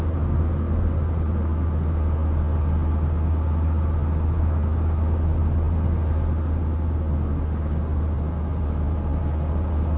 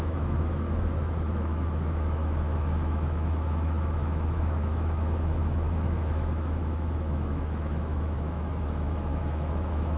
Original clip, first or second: first